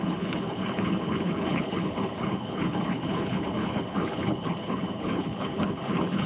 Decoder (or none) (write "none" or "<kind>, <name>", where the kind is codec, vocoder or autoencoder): codec, HILCodec